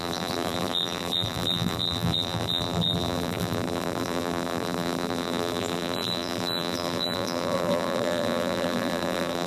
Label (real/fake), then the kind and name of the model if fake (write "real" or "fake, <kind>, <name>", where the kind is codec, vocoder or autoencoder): fake, vocoder, BigVGAN v2